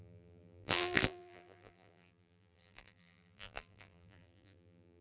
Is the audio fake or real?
fake